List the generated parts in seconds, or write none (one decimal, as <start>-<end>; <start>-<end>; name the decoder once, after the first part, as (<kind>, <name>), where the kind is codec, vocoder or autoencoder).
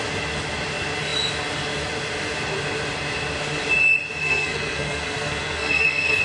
4.2-6.2 (codec, SNAC)